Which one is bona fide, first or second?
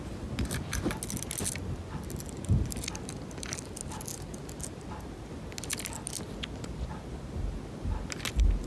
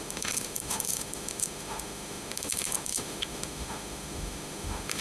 first